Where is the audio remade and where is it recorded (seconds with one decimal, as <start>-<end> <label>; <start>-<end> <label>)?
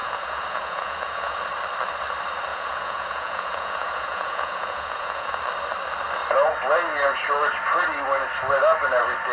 0.0-1.4 remade; 1.4-2.5 recorded; 2.5-5.4 remade; 5.4-9.3 recorded